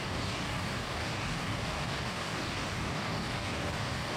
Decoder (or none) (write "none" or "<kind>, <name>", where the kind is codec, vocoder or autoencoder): codec, DAC